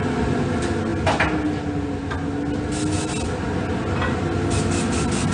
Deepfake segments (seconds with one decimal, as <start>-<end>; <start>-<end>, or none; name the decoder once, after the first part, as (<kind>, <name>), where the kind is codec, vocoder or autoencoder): none